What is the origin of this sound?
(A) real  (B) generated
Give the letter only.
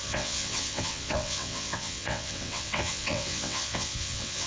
B